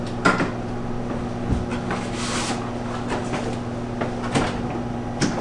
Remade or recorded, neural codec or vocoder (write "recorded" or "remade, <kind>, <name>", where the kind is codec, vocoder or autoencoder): recorded